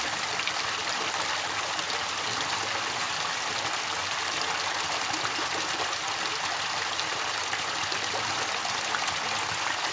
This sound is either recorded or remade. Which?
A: recorded